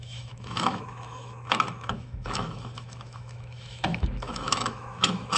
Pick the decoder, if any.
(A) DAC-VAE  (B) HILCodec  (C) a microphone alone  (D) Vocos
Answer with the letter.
A